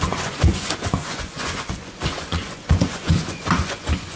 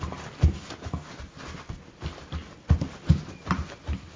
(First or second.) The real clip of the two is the second